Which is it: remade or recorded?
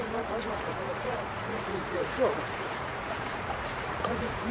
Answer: remade